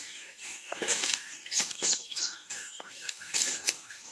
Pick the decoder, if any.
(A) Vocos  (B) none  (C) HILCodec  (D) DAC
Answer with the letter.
D